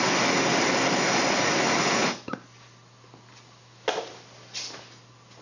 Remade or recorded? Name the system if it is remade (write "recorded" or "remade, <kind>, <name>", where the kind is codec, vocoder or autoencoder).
recorded